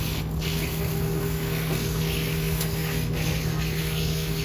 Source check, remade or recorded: remade